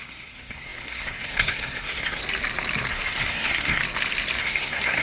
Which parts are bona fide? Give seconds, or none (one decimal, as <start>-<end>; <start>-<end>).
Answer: 2.2-2.9; 3.8-4.4